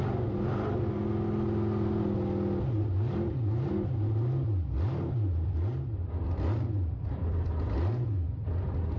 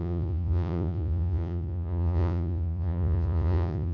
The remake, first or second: second